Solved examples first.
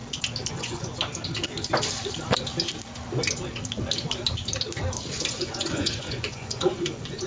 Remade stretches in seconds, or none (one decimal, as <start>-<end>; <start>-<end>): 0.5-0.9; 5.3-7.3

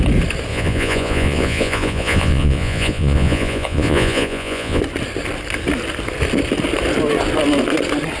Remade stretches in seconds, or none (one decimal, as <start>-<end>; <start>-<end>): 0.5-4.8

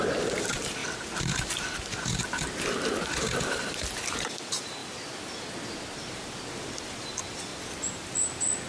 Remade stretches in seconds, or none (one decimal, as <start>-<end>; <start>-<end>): none